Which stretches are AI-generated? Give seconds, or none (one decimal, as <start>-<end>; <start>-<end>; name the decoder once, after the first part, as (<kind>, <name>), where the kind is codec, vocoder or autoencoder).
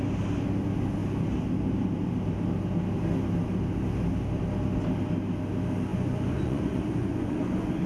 5.9-7.9 (vocoder, Vocos)